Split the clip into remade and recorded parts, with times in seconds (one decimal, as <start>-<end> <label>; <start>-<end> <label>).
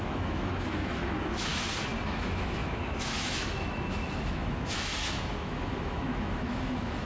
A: 0.0-1.5 remade; 1.5-2.0 recorded; 2.0-7.1 remade